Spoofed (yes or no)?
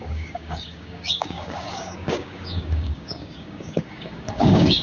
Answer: yes